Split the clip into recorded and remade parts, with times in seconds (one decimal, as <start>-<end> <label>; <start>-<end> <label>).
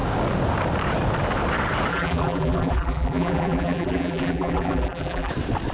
0.0-1.9 recorded; 1.9-5.3 remade; 5.3-5.7 recorded